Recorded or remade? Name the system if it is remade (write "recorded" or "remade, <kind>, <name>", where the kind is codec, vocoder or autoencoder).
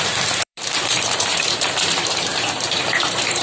remade, vocoder, BigVGAN v2